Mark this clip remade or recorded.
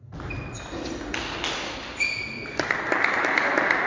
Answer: recorded